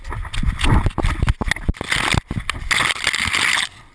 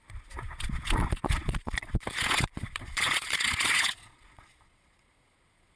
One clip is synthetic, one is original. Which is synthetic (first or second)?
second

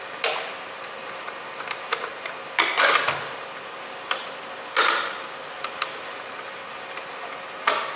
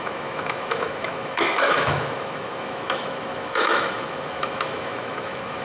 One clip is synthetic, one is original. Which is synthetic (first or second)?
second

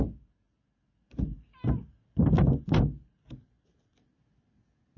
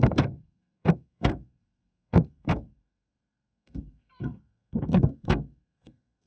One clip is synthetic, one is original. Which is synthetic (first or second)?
second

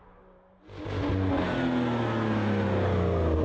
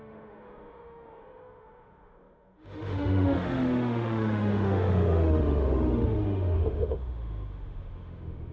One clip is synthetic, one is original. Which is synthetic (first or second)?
second